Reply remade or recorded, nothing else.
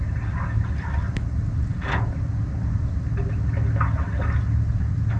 recorded